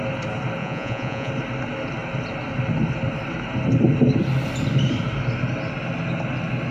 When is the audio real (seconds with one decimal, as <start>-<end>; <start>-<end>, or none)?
0.0-0.6; 1.3-6.7